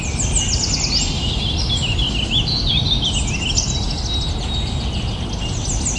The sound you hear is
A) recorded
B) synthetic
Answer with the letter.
A